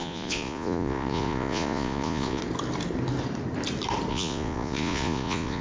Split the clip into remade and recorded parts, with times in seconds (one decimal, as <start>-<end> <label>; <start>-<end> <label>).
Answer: 0.0-2.4 remade; 2.4-4.1 recorded; 4.1-5.6 remade